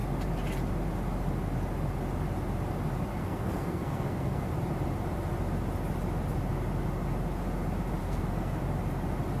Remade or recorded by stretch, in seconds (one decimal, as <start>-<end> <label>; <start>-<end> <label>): 0.0-3.1 recorded; 3.1-4.5 remade; 4.5-8.0 recorded; 8.0-8.6 remade; 8.6-9.4 recorded